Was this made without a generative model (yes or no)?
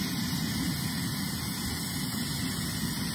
yes